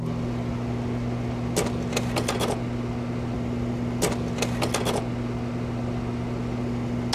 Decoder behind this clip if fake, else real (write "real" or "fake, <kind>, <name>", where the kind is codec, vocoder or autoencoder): real